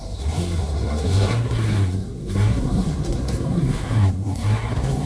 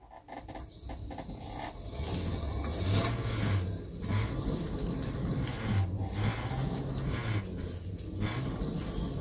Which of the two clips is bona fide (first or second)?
second